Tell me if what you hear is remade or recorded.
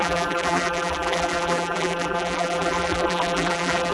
remade